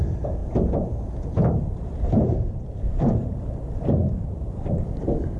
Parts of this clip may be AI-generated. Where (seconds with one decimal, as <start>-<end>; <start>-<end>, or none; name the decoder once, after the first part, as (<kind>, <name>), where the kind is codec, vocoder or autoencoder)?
0.4-3.6 (vocoder, BigVGAN v2); 4.0-4.7